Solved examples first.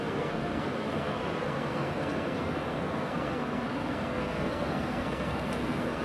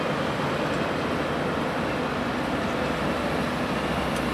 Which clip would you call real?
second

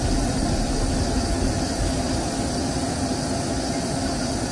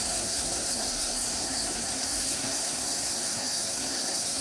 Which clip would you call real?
first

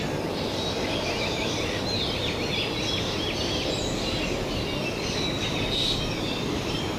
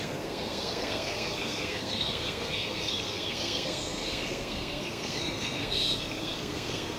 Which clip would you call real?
first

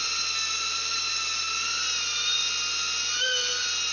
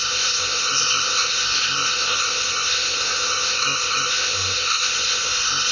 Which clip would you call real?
first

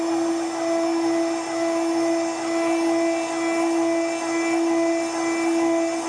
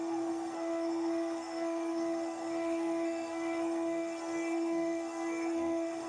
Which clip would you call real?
first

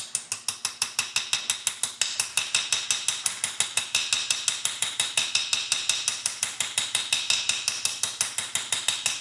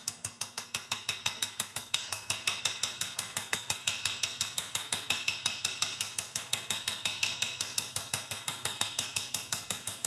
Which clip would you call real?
first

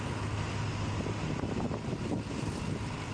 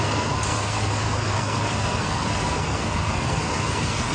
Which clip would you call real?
first